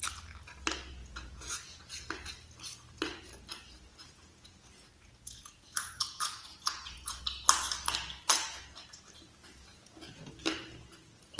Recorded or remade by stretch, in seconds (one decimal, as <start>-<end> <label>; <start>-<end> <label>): 0.0-1.0 recorded; 1.0-1.9 remade; 1.9-3.9 recorded; 3.9-7.2 remade; 7.2-9.7 recorded; 9.7-10.3 remade; 10.3-11.4 recorded